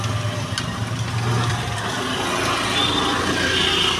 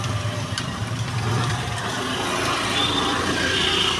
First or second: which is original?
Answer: first